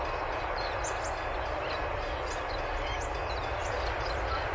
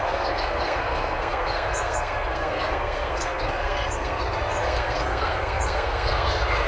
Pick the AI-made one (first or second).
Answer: second